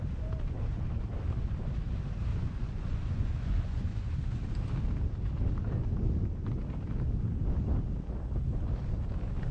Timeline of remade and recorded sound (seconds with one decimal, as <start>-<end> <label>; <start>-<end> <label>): 0.0-2.3 recorded; 2.3-4.1 remade; 4.1-9.5 recorded